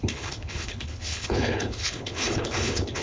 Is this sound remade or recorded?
remade